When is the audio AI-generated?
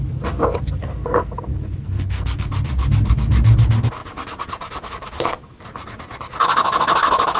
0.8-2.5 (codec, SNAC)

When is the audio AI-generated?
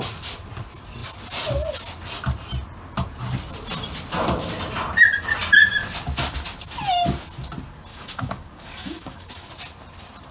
7.9-9.5 (codec, DAC)